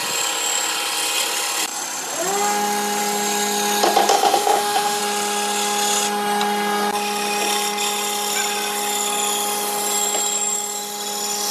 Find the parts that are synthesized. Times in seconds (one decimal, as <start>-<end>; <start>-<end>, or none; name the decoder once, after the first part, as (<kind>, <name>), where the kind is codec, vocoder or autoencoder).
4.1-5.0 (autoencoder, DAC-VAE)